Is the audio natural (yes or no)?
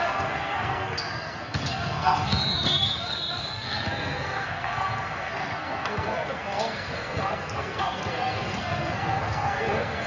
no